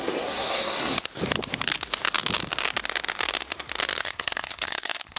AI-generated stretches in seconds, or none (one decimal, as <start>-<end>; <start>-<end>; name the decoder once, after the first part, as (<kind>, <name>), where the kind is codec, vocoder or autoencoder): 0.0-1.1 (codec, SNAC); 4.0-5.2